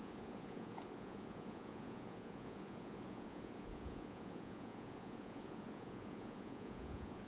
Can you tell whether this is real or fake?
fake